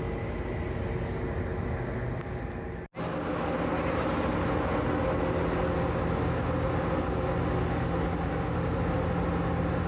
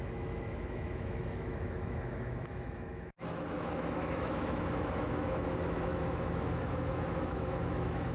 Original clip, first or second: first